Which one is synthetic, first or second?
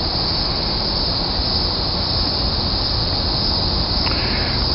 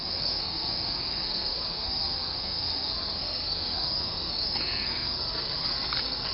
second